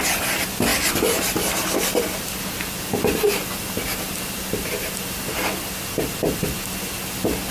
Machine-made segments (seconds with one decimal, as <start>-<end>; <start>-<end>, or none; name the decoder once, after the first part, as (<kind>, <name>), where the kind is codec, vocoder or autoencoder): none